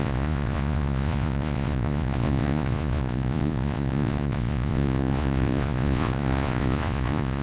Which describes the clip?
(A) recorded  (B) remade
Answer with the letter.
B